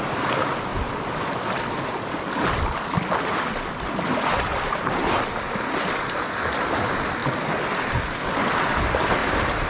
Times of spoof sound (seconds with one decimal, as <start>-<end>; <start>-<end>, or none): 4.5-5.2; 9.2-9.7